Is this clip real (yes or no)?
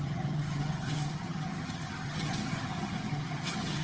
no